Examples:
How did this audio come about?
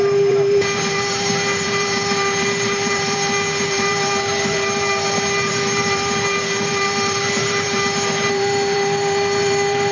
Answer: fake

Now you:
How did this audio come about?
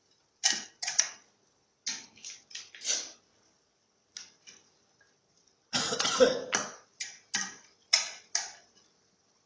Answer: fake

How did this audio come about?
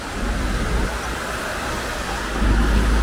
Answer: real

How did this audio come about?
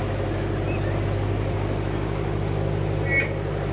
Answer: real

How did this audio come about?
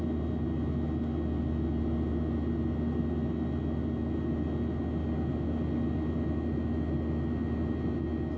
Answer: real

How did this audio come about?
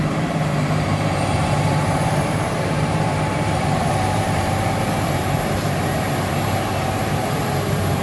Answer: fake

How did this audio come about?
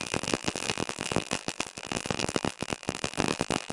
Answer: fake